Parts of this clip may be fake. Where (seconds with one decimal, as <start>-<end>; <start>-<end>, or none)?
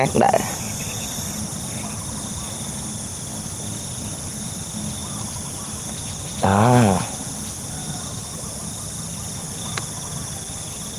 none